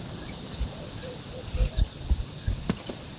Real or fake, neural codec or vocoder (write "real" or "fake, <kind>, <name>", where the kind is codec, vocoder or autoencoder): real